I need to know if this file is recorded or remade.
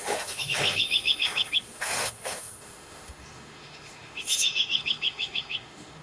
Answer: remade